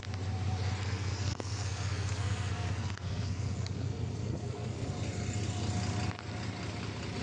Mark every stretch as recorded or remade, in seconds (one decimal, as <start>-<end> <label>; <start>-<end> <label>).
0.0-0.8 recorded; 0.8-4.9 remade; 4.9-7.2 recorded